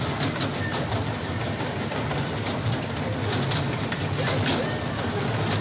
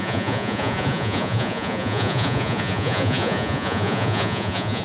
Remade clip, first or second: second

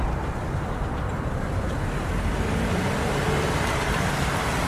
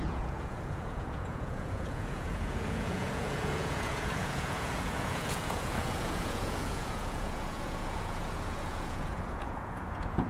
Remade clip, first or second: second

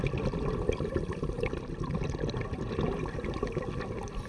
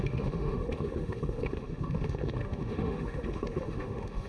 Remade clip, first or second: second